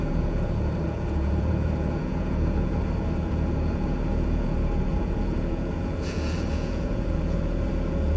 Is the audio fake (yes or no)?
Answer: yes